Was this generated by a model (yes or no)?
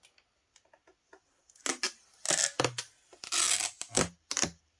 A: no